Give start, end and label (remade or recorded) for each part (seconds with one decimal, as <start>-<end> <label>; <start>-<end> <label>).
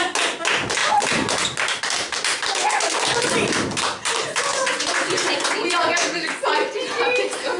0.0-4.5 recorded; 4.5-7.0 remade; 7.0-7.6 recorded